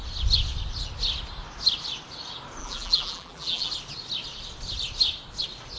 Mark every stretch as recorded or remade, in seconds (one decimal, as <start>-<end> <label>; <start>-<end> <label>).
0.0-2.6 recorded; 2.6-3.7 remade; 3.7-5.8 recorded